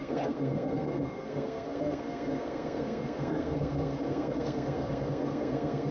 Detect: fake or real fake